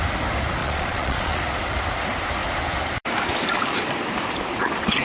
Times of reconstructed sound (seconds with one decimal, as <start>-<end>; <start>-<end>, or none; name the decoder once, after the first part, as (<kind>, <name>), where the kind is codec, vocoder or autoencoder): 0.6-1.4 (vocoder, Vocos)